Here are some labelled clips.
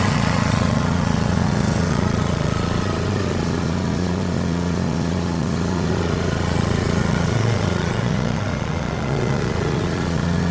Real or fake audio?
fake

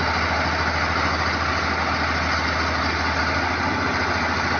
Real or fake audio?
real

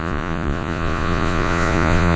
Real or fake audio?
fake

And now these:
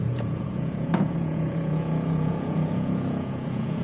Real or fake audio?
fake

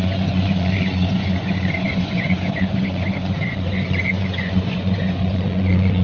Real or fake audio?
fake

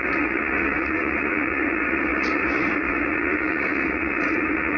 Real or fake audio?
fake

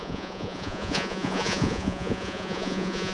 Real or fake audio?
fake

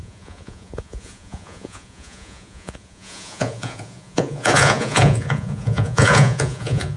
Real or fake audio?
fake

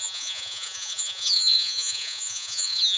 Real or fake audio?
fake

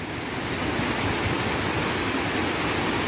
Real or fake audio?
real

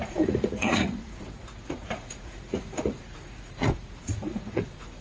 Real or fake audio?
fake